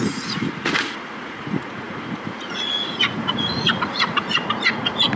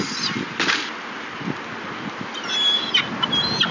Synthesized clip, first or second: first